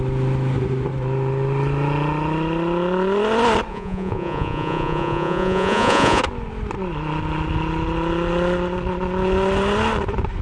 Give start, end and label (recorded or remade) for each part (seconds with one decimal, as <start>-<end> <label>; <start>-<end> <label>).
0.0-3.7 recorded; 3.7-6.2 remade; 6.2-10.4 recorded